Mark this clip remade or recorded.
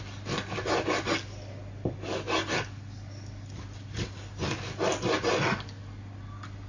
recorded